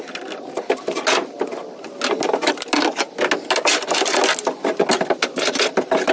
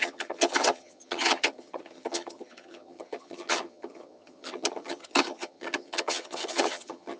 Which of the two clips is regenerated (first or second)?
second